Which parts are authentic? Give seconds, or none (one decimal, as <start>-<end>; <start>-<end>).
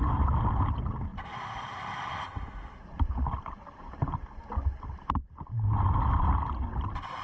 0.0-7.2